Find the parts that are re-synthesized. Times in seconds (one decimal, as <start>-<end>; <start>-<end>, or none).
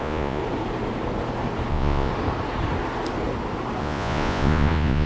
0.0-0.4; 1.7-2.1; 3.8-5.1